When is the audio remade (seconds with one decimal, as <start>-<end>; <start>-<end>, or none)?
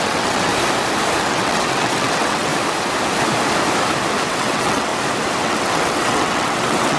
0.0-0.5; 1.2-2.5; 4.3-4.9; 5.4-7.0